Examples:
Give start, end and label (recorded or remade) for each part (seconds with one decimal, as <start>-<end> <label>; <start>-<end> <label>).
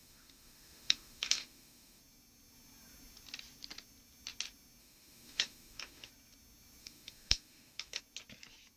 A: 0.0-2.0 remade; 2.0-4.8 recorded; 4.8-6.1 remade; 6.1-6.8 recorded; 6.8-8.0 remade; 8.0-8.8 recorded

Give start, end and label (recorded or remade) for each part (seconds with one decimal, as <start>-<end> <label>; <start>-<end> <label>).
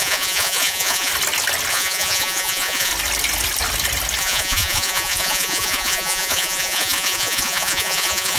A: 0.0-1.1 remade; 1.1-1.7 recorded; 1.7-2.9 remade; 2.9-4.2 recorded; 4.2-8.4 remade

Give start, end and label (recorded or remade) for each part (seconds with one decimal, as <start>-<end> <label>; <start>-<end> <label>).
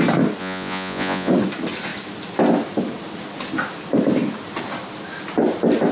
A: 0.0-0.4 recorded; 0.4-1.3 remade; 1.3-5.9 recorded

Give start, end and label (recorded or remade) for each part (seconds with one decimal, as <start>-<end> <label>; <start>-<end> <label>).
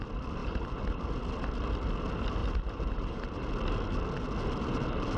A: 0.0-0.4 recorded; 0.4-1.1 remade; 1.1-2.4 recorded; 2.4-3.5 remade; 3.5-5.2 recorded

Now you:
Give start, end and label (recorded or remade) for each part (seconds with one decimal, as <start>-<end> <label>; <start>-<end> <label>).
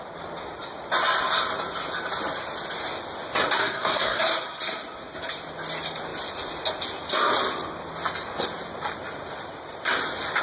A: 0.0-3.6 recorded; 3.6-4.2 remade; 4.2-10.4 recorded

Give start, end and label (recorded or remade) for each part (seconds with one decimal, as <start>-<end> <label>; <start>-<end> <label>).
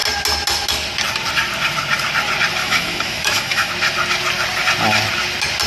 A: 0.0-2.6 recorded; 2.6-3.7 remade; 3.7-5.7 recorded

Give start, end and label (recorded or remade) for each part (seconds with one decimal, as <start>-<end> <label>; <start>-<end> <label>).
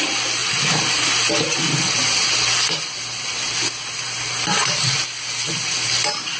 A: 0.0-0.4 recorded; 0.4-0.9 remade; 0.9-6.4 recorded